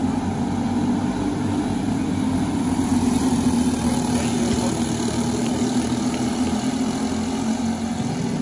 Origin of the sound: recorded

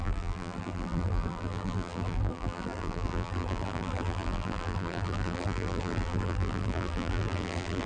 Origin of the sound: remade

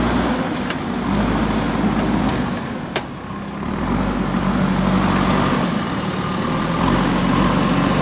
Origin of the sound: recorded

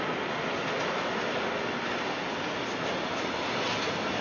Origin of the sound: recorded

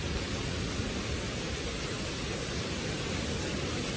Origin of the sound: recorded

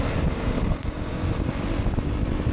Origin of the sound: recorded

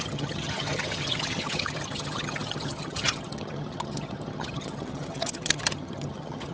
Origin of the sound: remade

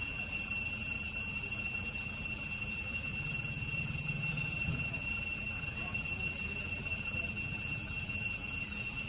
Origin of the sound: remade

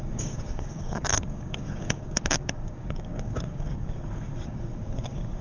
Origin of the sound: remade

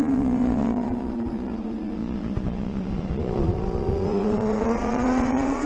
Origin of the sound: remade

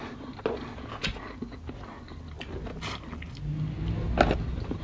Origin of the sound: recorded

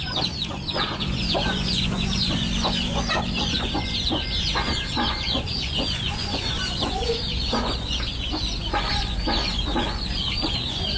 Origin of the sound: remade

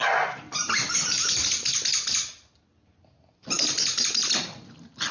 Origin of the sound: recorded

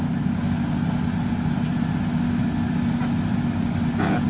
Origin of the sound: recorded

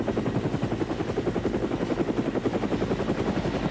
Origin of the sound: recorded